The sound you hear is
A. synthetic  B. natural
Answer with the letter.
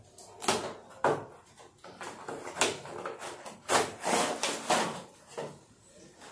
B